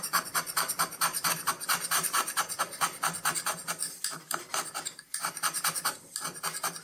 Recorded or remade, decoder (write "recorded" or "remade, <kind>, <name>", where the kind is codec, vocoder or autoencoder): recorded